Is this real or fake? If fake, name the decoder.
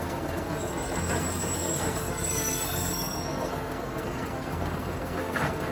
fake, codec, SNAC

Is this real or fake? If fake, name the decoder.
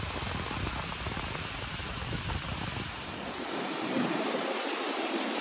real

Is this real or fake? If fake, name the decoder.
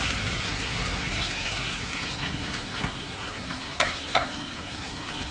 fake, codec, SNAC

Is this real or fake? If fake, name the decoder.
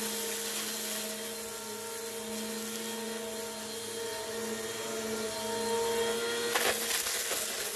real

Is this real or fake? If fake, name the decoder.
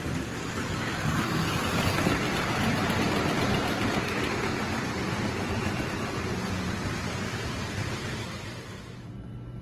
real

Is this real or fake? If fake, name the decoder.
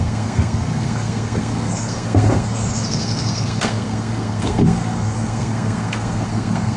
fake, codec, SNAC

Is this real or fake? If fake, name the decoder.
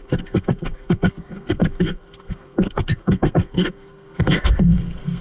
fake, codec, SNAC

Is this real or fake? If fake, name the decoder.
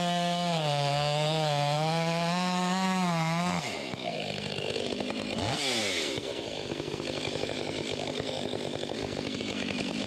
fake, codec, SNAC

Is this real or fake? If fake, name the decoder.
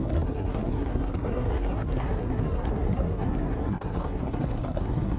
fake, codec, SNAC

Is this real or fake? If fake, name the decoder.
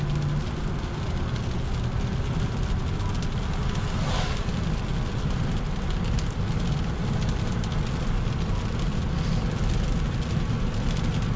real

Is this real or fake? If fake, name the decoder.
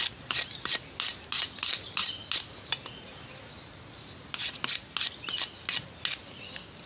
real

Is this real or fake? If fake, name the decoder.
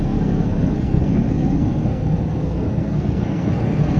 fake, codec, SNAC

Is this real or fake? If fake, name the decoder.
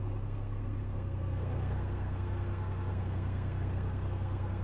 fake, codec, SNAC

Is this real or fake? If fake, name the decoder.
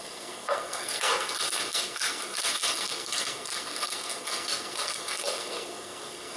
fake, codec, SNAC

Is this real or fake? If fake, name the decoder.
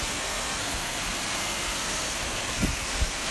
fake, codec, SNAC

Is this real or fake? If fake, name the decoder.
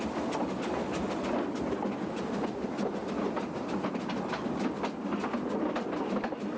real